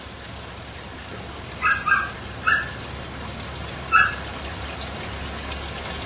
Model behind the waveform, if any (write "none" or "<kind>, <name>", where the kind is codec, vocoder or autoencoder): none